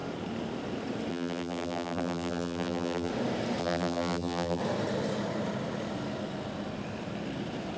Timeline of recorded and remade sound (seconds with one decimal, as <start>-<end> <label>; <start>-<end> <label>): 0.0-1.1 recorded; 1.1-3.1 remade; 3.1-3.6 recorded; 3.6-4.6 remade; 4.6-7.8 recorded